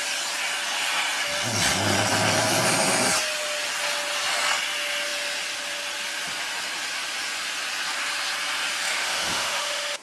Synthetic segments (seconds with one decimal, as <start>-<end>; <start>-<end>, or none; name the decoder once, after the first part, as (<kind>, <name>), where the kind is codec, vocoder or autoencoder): 8.9-10.0 (autoencoder, DAC-VAE)